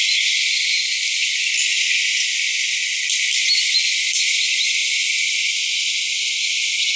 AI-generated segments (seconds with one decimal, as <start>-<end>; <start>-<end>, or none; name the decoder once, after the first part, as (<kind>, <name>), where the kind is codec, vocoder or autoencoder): none